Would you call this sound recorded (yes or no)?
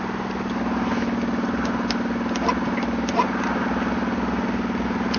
yes